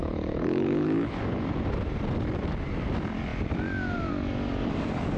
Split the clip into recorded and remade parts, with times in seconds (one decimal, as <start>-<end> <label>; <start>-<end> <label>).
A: 0.0-1.2 remade; 1.2-5.2 recorded

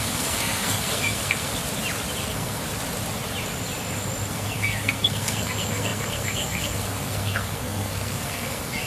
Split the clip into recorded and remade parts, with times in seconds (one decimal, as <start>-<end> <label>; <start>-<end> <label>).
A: 0.0-1.5 remade; 1.5-2.2 recorded; 2.2-2.6 remade; 2.6-4.3 recorded; 4.3-8.9 remade

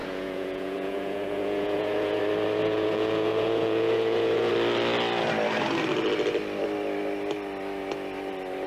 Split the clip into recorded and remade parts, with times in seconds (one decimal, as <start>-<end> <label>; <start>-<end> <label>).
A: 0.0-2.2 remade; 2.2-2.6 recorded; 2.6-4.5 remade; 4.5-8.7 recorded

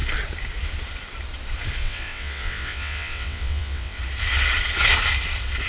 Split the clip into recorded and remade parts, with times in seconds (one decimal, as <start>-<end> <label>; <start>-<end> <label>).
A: 0.0-1.8 recorded; 1.8-4.0 remade; 4.0-5.7 recorded

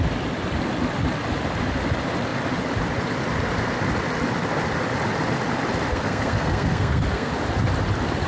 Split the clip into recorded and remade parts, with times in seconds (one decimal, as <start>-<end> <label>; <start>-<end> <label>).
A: 0.0-5.9 recorded; 5.9-7.3 remade; 7.3-8.3 recorded

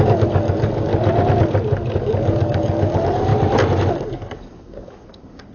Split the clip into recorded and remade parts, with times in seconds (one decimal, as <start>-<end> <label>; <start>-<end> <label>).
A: 0.0-0.9 remade; 0.9-2.0 recorded; 2.0-3.3 remade; 3.3-3.9 recorded; 3.9-5.5 remade

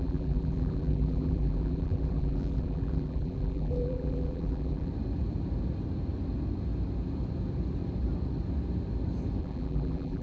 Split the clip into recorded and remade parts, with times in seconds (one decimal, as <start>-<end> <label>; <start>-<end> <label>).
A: 0.0-4.9 remade; 4.9-9.4 recorded; 9.4-10.2 remade

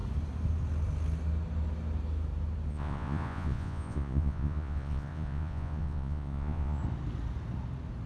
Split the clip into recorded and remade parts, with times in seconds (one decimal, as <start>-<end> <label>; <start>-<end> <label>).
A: 0.0-2.7 recorded; 2.7-6.8 remade; 6.8-8.1 recorded